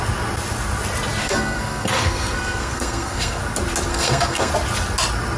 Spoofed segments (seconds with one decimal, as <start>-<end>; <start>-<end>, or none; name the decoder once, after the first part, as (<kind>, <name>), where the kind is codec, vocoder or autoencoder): 1.2-3.4 (codec, SNAC); 3.9-4.5